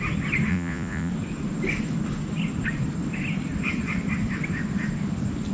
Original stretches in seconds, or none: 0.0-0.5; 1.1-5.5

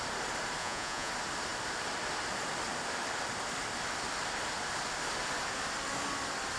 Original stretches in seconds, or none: 0.0-0.6; 1.1-6.6

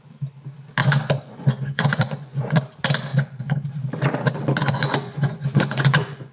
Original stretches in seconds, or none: 0.0-0.8; 2.6-3.1; 3.7-4.6

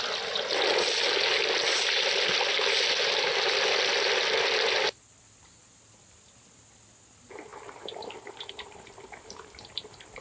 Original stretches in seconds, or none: 0.0-10.2

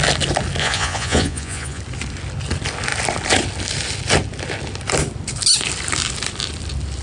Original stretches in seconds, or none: 0.0-0.6; 1.8-7.0

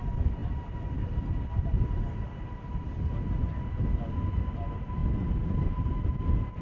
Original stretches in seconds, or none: 0.0-6.6

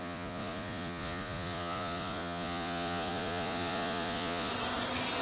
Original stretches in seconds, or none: 4.5-5.2